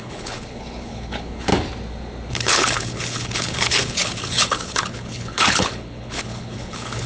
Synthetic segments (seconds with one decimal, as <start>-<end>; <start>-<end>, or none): 0.0-1.5; 2.3-7.1